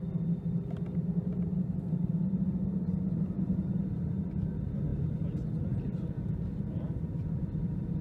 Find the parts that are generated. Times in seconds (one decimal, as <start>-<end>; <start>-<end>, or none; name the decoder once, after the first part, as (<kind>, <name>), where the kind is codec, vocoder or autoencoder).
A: none